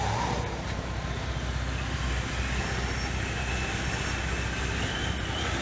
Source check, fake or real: real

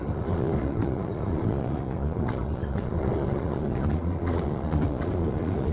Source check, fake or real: fake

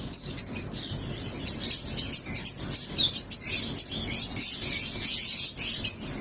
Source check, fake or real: real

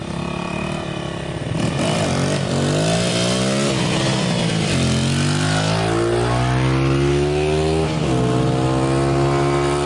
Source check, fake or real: real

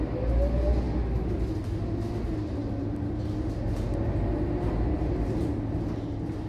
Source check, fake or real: real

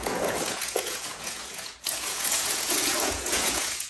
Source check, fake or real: fake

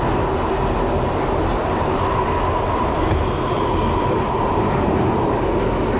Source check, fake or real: real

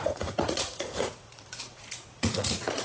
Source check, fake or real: fake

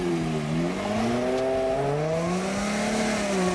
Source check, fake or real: real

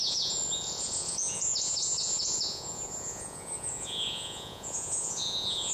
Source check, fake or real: fake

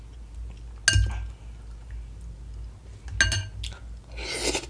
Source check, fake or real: real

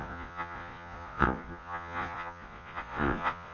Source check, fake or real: fake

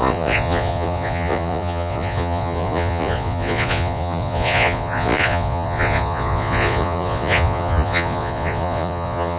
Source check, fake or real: fake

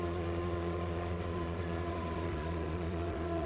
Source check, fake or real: fake